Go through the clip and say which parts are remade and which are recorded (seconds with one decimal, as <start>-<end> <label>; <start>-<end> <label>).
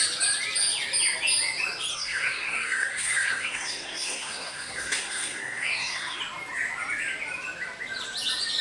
0.0-1.9 recorded; 1.9-6.2 remade; 6.2-8.6 recorded